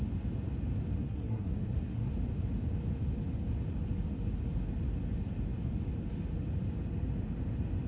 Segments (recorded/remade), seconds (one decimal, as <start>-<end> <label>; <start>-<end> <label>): 0.0-1.0 recorded; 1.0-2.1 remade; 2.1-7.9 recorded